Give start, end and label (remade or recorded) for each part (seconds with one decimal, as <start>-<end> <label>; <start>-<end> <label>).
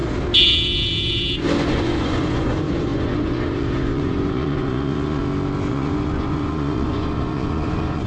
0.0-1.7 recorded; 1.7-5.2 remade; 5.2-5.7 recorded; 5.7-8.1 remade